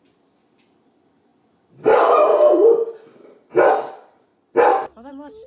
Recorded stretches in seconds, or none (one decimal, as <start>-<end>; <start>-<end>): 0.0-5.5

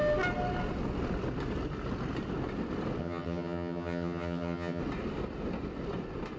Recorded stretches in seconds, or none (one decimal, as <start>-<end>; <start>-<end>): 0.0-3.0; 4.8-6.4

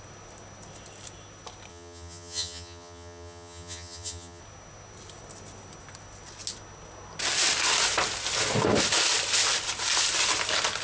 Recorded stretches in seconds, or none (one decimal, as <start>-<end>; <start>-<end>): 0.0-1.7; 4.4-10.8

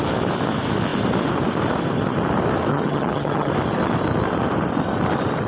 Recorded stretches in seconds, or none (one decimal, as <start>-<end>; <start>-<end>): 0.0-2.7; 3.5-5.5

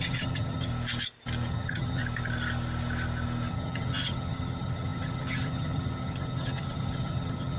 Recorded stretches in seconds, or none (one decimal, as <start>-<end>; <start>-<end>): 0.7-1.5; 2.0-3.5

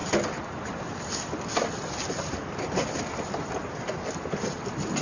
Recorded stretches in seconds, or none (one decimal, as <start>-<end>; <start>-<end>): 0.0-5.0

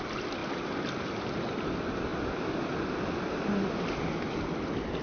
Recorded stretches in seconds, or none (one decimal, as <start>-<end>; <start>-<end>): 0.0-5.0

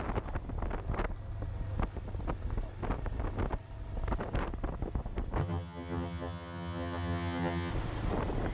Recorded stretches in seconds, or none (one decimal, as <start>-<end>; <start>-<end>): 0.0-5.4; 7.7-8.5